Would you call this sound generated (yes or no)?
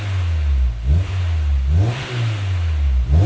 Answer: no